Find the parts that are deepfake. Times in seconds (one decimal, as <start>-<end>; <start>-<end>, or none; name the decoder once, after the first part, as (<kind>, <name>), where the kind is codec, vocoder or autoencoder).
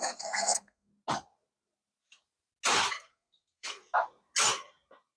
0.0-0.9 (codec, SNAC); 2.9-3.8